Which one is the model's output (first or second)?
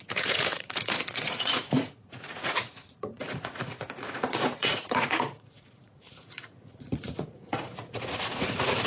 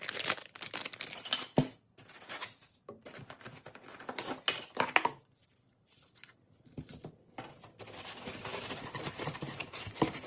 first